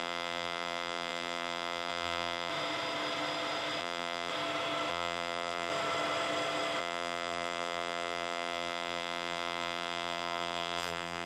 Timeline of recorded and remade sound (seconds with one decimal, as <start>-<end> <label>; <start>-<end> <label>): 0.0-2.5 remade; 2.5-3.8 recorded; 3.8-4.3 remade; 4.3-4.9 recorded; 4.9-5.7 remade; 5.7-6.8 recorded; 6.8-11.3 remade